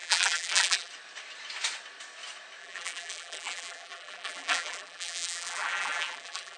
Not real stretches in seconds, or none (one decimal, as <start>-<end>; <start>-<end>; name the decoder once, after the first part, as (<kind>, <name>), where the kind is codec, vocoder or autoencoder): 0.0-0.9 (vocoder, BigVGAN v2); 2.6-6.6